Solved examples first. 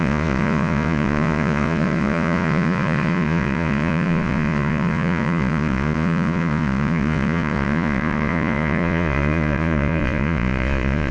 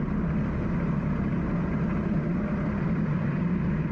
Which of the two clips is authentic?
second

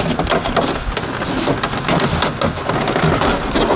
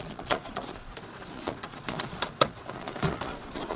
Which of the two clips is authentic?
first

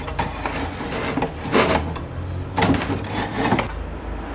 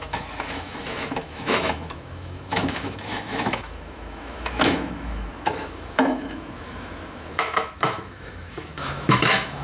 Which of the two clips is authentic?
first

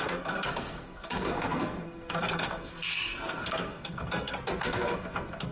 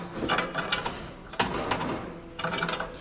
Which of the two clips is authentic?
second